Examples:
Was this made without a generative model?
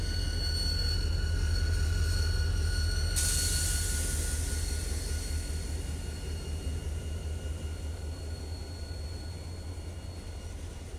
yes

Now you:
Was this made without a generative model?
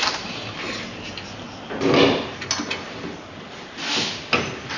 yes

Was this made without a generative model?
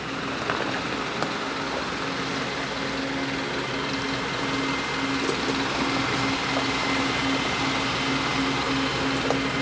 yes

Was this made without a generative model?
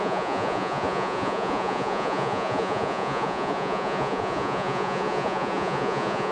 no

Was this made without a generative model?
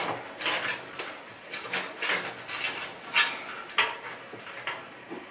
yes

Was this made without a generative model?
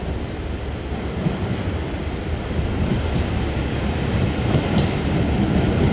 yes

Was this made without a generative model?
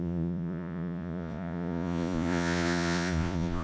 no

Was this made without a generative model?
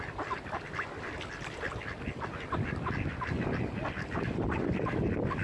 yes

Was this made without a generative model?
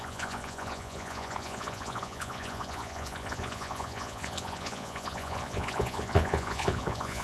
no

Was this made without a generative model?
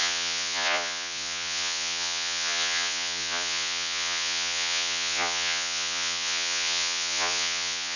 no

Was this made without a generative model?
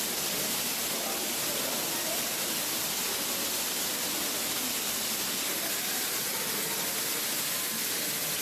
yes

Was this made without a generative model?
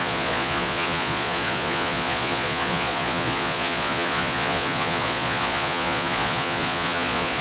no